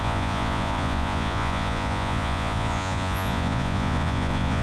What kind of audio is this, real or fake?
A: fake